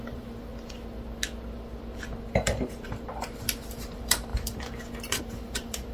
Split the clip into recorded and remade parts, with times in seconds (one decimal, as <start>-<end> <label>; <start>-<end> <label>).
0.0-0.5 remade; 0.5-2.3 recorded; 2.3-5.9 remade